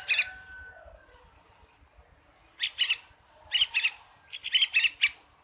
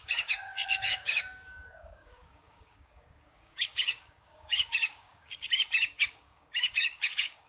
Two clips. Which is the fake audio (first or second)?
second